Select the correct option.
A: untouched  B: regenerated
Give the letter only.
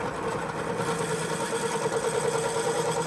A